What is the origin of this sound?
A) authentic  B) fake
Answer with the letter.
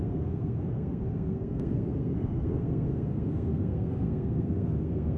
B